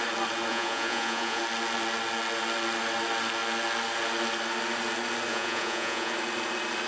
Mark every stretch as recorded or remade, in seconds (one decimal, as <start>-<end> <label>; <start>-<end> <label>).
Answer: 0.0-0.5 recorded; 0.5-1.4 remade; 1.4-5.3 recorded; 5.3-6.1 remade; 6.1-6.9 recorded

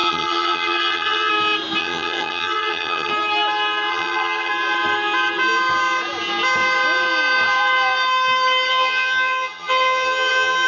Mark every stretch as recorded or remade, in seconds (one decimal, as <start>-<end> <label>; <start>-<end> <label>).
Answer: 0.0-1.3 remade; 1.3-1.8 recorded; 1.8-3.1 remade; 3.1-3.9 recorded; 3.9-4.5 remade; 4.5-8.7 recorded; 8.7-10.7 remade